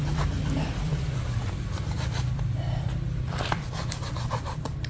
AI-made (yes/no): yes